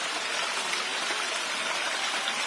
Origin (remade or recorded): recorded